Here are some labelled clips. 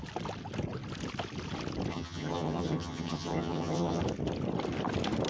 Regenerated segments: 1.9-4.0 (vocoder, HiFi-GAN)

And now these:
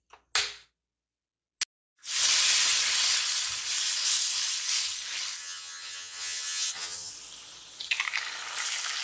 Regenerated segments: 5.4-7.1 (vocoder, HiFi-GAN)